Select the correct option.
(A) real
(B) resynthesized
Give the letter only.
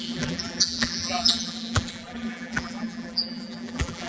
B